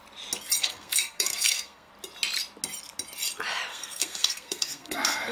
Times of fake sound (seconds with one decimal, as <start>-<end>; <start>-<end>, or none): 0.6-1.9; 3.7-5.3